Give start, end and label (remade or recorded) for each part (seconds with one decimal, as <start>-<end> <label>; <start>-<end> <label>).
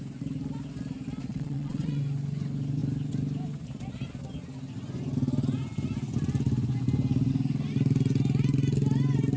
0.0-1.3 recorded; 1.3-2.0 remade; 2.0-9.4 recorded